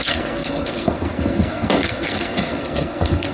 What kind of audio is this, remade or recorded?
remade